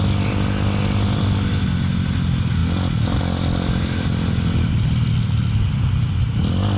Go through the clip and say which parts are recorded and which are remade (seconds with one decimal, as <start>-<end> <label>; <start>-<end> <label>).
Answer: 0.0-6.8 recorded